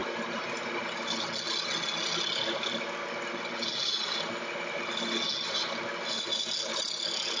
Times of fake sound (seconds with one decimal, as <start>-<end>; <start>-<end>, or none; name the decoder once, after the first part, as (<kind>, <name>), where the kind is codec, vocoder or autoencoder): none